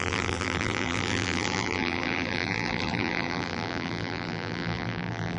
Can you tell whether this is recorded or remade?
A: remade